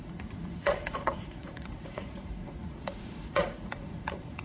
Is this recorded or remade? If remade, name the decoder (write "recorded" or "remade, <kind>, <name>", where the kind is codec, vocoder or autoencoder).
remade, vocoder, Vocos